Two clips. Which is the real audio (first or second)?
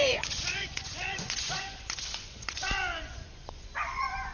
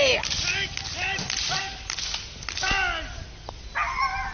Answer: second